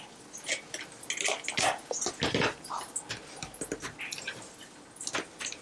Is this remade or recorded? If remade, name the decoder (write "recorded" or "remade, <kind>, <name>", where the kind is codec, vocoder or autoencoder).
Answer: recorded